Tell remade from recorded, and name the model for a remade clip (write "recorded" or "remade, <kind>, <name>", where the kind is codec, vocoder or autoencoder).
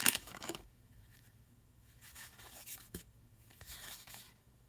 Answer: remade, autoencoder, DAC-VAE